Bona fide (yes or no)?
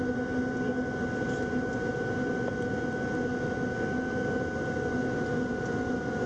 yes